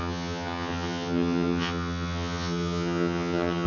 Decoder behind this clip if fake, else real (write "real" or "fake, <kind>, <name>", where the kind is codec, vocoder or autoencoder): fake, vocoder, HiFi-GAN